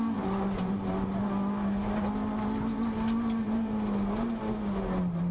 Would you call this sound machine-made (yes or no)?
no